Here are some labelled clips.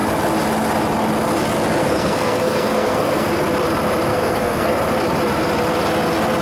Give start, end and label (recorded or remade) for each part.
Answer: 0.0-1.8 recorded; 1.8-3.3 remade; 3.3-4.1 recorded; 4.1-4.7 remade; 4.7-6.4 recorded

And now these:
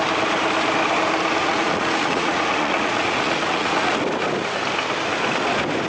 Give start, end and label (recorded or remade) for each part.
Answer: 0.0-1.4 recorded; 1.4-3.9 remade; 3.9-5.9 recorded

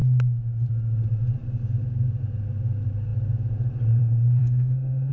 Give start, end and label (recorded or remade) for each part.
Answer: 0.0-4.4 recorded; 4.4-5.1 remade

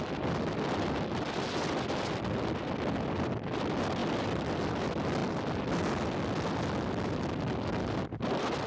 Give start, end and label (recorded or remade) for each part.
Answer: 0.0-8.7 recorded